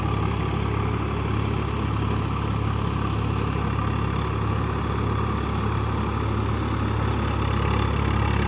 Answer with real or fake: real